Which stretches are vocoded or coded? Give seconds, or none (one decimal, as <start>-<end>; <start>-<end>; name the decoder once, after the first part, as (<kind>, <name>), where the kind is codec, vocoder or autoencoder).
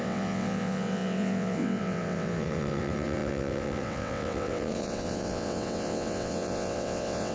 0.0-7.3 (vocoder, WaveNeXt)